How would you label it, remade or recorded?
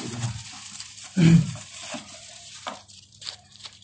remade